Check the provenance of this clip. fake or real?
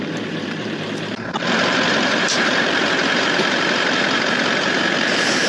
fake